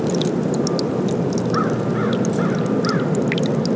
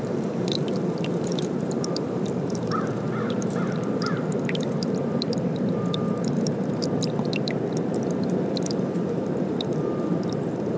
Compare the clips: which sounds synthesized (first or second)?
second